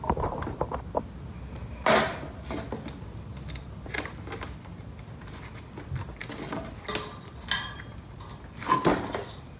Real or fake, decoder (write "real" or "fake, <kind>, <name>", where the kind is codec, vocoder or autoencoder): real